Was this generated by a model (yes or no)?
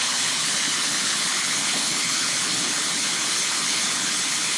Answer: yes